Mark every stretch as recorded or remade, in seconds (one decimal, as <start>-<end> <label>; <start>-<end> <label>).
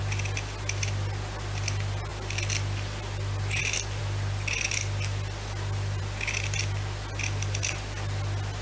0.0-8.6 recorded